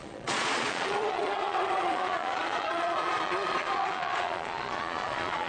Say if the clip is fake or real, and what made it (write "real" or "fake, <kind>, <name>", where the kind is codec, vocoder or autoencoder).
fake, vocoder, Vocos